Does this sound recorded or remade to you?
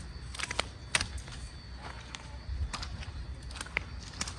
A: recorded